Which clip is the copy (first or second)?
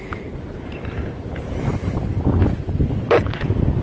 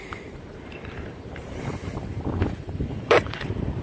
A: second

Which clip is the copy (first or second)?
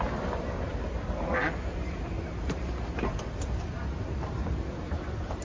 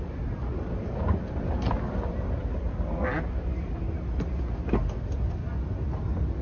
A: first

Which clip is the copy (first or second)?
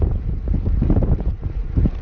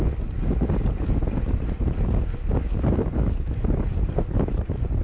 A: first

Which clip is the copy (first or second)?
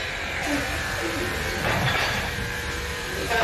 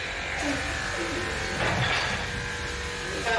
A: first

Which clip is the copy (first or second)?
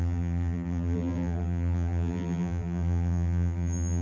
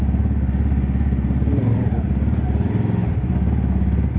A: first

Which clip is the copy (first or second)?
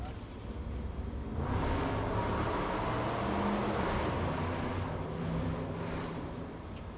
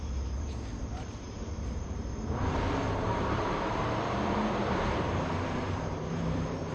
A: second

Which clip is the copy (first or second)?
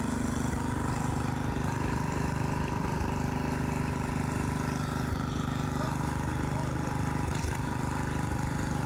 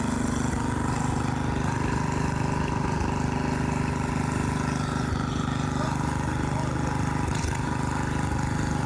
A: first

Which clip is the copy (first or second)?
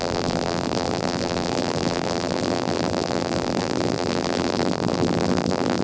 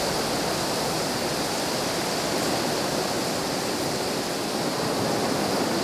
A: first